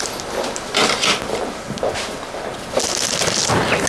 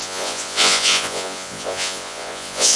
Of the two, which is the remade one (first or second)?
second